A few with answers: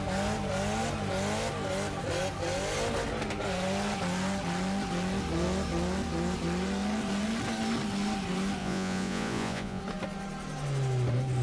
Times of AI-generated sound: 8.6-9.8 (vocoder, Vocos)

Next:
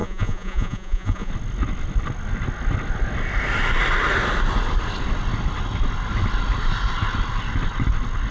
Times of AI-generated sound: 0.0-1.3 (vocoder, Vocos)

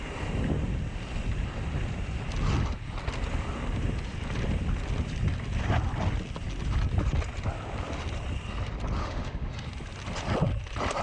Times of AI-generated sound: 9.0-9.5 (autoencoder, DAC-VAE)

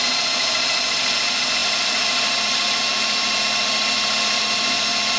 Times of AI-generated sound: none

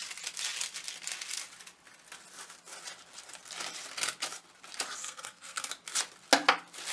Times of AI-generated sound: 5.0-5.7 (codec, SNAC)

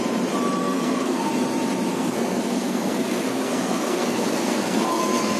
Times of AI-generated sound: 0.6-1.3 (codec, SNAC); 1.9-5.4

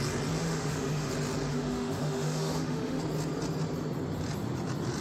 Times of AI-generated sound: 0.4-1.1 (autoencoder, DAC-VAE); 1.5-3.0